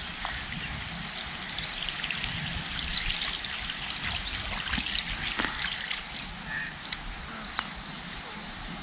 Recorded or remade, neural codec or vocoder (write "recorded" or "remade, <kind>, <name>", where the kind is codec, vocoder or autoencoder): recorded